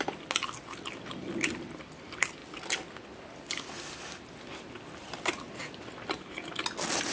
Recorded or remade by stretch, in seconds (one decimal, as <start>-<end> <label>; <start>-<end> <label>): 0.0-7.1 recorded